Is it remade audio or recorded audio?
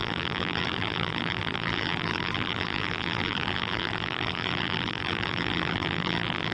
remade